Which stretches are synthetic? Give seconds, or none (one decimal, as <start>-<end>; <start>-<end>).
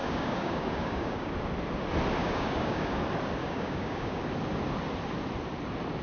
0.0-1.3; 2.2-3.0; 3.4-4.2